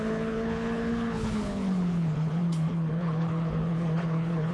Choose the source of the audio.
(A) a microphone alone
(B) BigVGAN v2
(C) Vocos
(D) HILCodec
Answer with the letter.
D